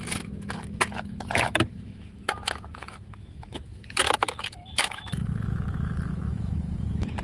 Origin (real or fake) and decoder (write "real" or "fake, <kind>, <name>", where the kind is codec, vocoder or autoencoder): fake, autoencoder, DAC-VAE